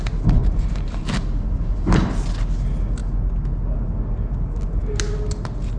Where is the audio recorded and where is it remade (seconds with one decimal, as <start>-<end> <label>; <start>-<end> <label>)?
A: 0.0-0.4 recorded; 0.4-2.1 remade; 2.1-5.8 recorded